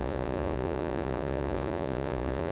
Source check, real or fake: fake